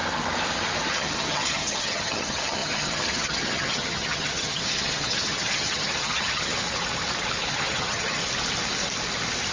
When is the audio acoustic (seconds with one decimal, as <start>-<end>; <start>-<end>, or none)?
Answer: 0.0-0.9; 6.5-7.5; 8.2-9.5